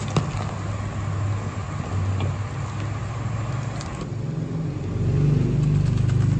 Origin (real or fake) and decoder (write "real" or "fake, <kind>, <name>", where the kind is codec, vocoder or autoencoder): real